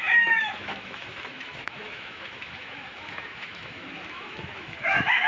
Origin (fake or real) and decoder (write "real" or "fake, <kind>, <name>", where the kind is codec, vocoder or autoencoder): fake, autoencoder, DAC-VAE